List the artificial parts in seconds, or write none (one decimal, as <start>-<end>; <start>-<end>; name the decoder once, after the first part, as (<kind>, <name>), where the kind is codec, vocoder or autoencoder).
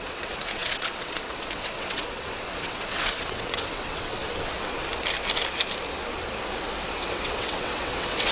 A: 0.0-4.2 (vocoder, WaveNeXt); 7.0-8.3